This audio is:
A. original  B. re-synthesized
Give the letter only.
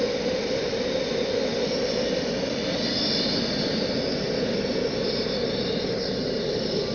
A